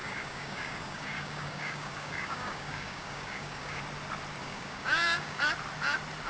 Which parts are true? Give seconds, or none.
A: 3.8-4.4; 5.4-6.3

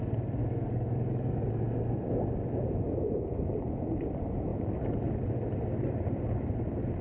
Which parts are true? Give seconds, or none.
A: 0.0-0.4; 1.5-7.0

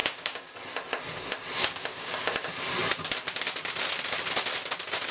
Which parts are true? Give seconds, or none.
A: 0.5-1.6; 2.3-5.1

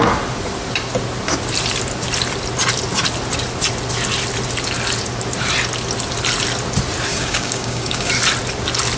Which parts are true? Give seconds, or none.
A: 0.0-7.1; 8.1-9.0

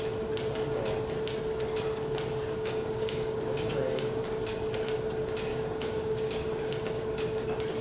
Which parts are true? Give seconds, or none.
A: 0.0-2.4; 4.2-5.5; 7.0-7.8